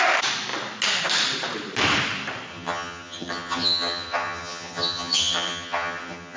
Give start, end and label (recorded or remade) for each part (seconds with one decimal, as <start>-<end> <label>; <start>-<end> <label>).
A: 0.0-2.5 recorded; 2.5-6.4 remade